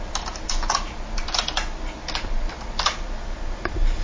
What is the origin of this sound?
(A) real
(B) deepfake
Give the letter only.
A